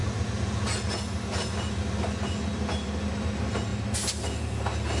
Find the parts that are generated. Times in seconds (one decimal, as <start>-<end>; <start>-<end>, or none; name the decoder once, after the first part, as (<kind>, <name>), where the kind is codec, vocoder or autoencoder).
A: none